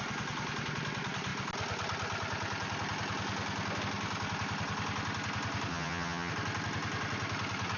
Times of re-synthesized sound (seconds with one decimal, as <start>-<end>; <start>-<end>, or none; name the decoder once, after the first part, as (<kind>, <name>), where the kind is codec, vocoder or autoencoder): 5.7-6.3 (vocoder, HiFi-GAN)

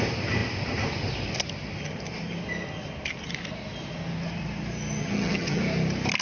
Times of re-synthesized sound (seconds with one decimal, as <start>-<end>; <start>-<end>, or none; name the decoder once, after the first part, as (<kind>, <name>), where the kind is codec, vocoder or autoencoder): 5.0-5.6 (vocoder, HiFi-GAN)

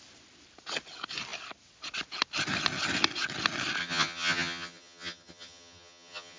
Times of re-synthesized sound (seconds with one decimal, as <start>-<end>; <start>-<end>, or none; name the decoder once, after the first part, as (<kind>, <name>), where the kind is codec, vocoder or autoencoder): 3.8-6.4 (vocoder, HiFi-GAN)

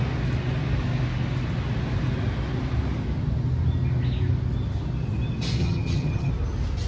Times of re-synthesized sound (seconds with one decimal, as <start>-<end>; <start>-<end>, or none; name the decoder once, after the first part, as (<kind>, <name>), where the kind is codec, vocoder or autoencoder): 5.6-6.3 (vocoder, HiFi-GAN)

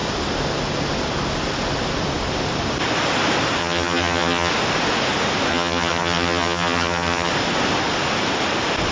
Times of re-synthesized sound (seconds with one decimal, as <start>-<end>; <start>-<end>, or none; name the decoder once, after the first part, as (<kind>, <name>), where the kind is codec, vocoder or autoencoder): 3.6-4.5 (vocoder, HiFi-GAN); 5.5-7.3

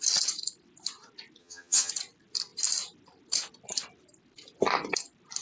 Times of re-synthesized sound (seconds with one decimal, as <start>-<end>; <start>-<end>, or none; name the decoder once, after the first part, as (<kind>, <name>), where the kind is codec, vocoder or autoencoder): 1.4-1.9 (vocoder, HiFi-GAN)

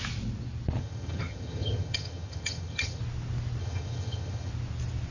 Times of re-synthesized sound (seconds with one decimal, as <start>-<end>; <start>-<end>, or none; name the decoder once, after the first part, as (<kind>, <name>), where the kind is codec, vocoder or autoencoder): 0.8-3.0 (vocoder, HiFi-GAN); 3.6-4.5

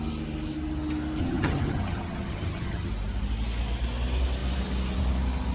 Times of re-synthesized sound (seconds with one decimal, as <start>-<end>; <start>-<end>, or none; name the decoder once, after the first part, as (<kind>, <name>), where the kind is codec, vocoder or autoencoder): 1.2-2.9 (vocoder, HiFi-GAN)